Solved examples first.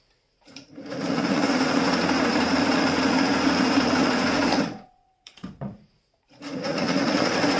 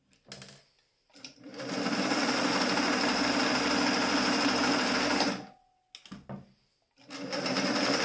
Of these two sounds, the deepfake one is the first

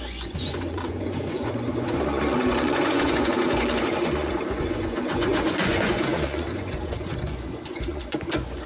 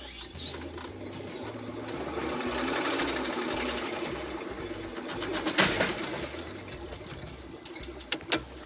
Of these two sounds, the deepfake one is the first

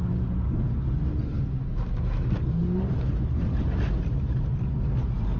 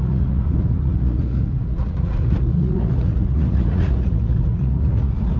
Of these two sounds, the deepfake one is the second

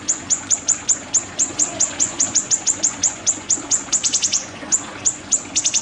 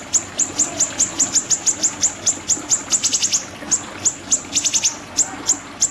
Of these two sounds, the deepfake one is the first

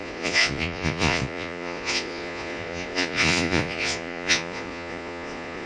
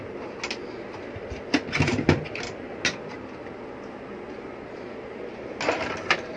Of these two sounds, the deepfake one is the first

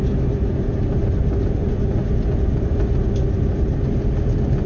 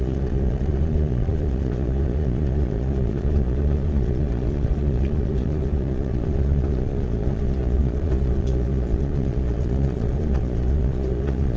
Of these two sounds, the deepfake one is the second